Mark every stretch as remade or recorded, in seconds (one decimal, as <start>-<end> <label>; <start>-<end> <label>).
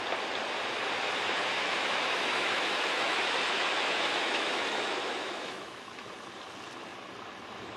0.0-1.4 recorded; 1.4-6.1 remade; 6.1-7.8 recorded